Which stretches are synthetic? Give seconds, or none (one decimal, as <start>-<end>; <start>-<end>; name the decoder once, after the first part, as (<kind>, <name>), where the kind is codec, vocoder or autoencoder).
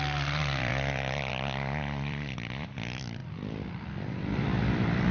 0.0-0.7 (vocoder, BigVGAN v2); 1.3-5.1